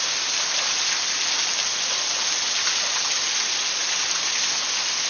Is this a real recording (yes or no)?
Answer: yes